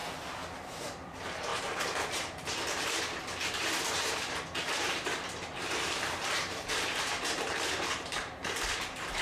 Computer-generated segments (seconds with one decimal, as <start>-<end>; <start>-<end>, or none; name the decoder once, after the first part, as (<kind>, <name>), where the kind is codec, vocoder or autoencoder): 0.8-9.2 (vocoder, BigVGAN v2)